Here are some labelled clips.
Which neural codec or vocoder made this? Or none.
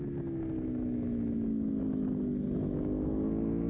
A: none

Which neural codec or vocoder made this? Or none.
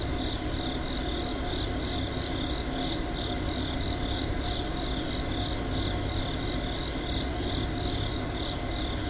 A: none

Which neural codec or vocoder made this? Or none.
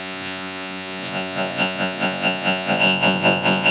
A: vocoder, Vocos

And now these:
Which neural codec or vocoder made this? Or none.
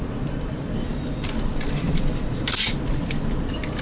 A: none